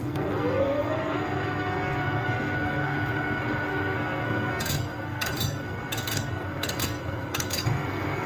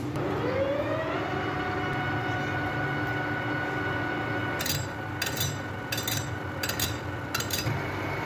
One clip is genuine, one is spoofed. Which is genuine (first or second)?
second